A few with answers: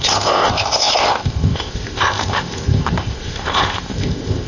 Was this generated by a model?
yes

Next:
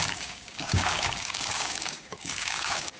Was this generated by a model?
yes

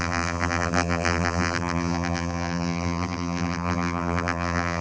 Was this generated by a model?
yes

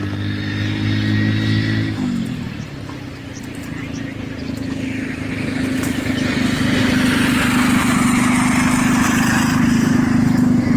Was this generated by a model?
no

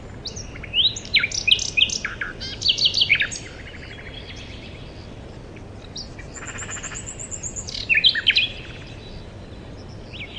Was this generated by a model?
no